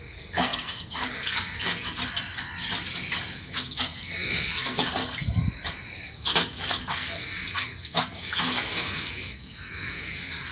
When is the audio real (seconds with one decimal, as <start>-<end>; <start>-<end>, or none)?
2.0-3.4; 5.0-6.1